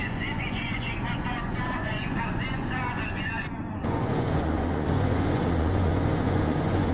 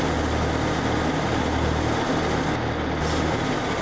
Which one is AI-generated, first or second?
first